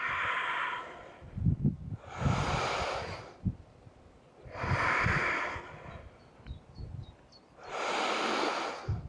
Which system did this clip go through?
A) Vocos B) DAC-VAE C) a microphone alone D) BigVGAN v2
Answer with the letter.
C